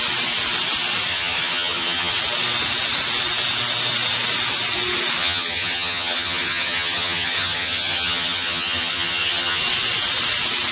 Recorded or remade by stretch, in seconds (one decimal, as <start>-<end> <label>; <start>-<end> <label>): 0.0-1.1 recorded; 1.1-2.1 remade; 2.1-5.2 recorded; 5.2-9.6 remade; 9.6-10.7 recorded